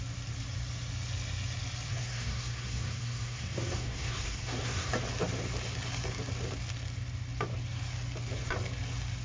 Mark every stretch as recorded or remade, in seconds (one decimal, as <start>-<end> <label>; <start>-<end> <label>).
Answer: 0.0-1.9 recorded; 1.9-4.9 remade; 4.9-9.2 recorded

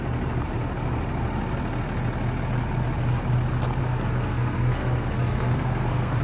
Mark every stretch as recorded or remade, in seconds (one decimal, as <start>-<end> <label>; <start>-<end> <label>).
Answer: 0.0-3.8 recorded; 3.8-6.2 remade

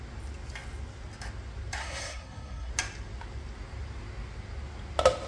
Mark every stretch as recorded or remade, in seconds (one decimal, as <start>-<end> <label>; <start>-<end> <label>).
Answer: 0.0-1.8 recorded; 1.8-2.7 remade; 2.7-5.3 recorded

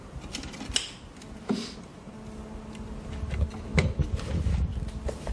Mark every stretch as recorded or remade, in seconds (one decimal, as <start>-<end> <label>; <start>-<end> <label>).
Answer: 0.0-5.3 recorded

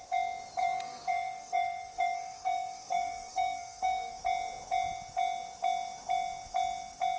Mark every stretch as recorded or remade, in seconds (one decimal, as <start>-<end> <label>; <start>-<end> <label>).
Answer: 0.0-0.6 recorded; 0.6-4.2 remade; 4.2-7.2 recorded

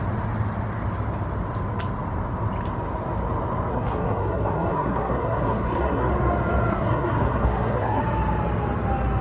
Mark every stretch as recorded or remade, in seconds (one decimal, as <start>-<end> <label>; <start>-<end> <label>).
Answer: 0.0-3.7 recorded; 3.7-6.1 remade; 6.1-6.7 recorded; 6.7-8.0 remade; 8.0-9.2 recorded

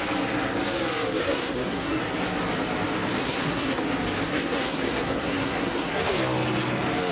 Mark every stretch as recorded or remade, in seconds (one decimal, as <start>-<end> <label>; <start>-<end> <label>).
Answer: 0.0-1.2 recorded; 1.2-2.0 remade; 2.0-3.2 recorded; 3.2-3.8 remade; 3.8-4.3 recorded; 4.3-6.0 remade; 6.0-7.1 recorded